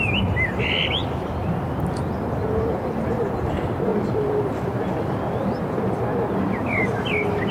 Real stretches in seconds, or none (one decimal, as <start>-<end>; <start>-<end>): 0.0-3.9; 4.9-7.5